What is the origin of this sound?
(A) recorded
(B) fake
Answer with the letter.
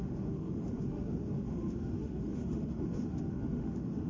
B